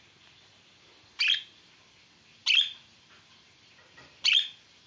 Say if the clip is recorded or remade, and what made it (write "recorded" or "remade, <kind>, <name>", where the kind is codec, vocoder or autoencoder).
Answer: recorded